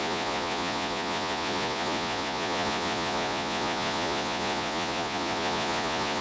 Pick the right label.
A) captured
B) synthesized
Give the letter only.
B